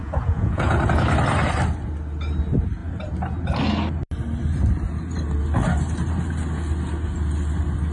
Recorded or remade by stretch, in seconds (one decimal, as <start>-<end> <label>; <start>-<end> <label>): 0.0-0.8 remade; 0.8-7.9 recorded